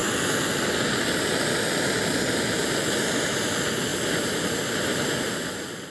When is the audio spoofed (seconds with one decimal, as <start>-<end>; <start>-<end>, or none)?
none